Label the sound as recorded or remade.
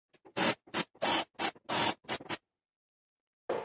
recorded